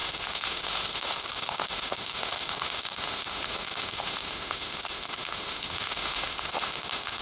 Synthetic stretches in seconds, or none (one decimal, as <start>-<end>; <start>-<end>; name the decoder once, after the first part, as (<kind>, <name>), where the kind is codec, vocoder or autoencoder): 0.0-7.2 (autoencoder, DAC-VAE)